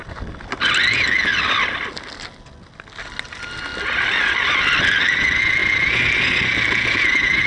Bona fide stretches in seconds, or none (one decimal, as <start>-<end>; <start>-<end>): 0.0-7.5